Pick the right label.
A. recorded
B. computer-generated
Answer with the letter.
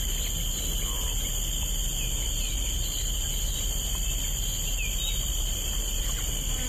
A